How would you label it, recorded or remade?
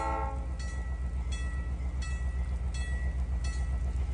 recorded